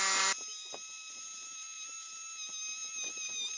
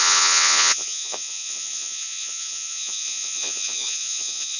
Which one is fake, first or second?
second